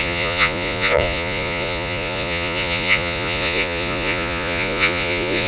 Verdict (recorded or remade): remade